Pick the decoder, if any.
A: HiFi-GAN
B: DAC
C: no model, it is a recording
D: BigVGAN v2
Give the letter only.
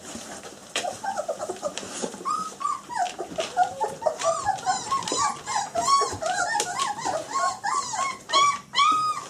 D